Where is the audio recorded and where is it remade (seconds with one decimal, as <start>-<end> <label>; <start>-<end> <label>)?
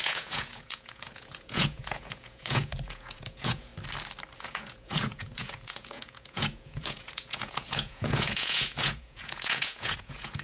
0.0-3.7 remade; 3.7-4.4 recorded; 4.4-10.4 remade